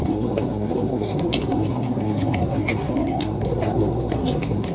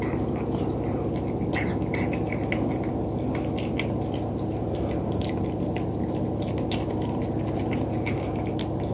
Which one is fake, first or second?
first